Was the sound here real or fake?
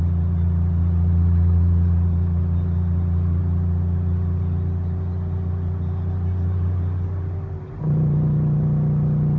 real